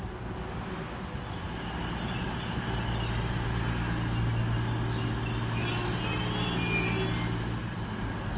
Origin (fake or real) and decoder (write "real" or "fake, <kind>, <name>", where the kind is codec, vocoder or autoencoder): real